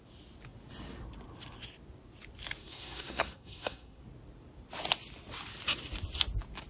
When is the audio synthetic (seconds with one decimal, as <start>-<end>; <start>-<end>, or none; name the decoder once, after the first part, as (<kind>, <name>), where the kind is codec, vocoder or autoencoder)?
2.6-4.0 (codec, SNAC)

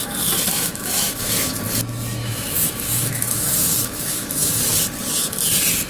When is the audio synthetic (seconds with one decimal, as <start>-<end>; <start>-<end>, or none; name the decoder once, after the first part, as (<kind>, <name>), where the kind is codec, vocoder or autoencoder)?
0.5-1.6 (autoencoder, DAC-VAE); 2.2-4.6

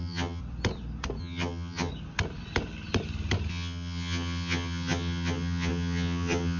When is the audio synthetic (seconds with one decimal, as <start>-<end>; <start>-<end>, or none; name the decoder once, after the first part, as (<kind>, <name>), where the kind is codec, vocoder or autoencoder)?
0.0-0.4 (vocoder, HiFi-GAN); 1.2-1.9; 3.5-6.6